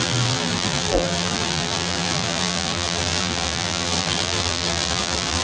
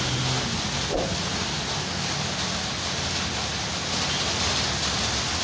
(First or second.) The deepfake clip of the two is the first